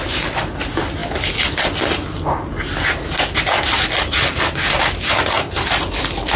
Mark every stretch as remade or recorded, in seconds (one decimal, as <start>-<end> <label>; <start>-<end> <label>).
0.0-6.4 recorded